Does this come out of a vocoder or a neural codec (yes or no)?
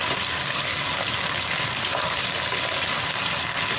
no